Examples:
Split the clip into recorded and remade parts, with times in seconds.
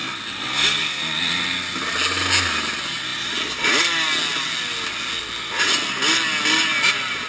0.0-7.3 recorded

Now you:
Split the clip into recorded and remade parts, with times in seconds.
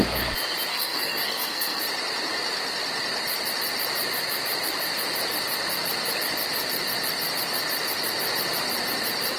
0.0-0.7 recorded; 0.7-1.8 remade; 1.8-9.4 recorded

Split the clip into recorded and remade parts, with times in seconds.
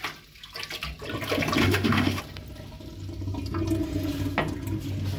0.0-1.6 recorded; 1.6-2.2 remade; 2.2-5.2 recorded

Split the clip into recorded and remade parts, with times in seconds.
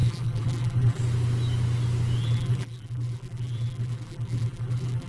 0.0-1.0 remade; 1.0-2.2 recorded; 2.2-5.1 remade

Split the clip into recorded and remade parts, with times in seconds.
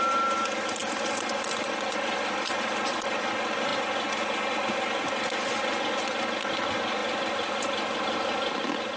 0.0-0.8 recorded; 0.8-3.3 remade; 3.3-9.0 recorded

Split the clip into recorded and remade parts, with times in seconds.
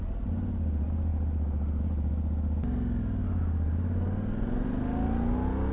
0.0-5.7 recorded